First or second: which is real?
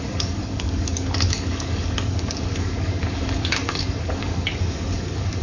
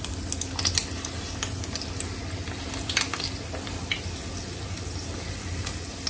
second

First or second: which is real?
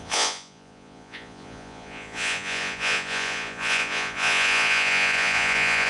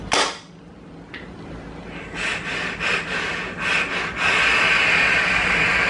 second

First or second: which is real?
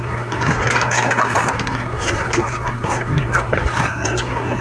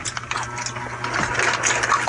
second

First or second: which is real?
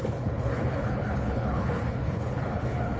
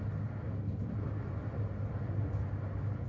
second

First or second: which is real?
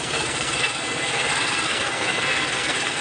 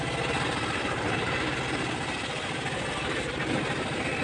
second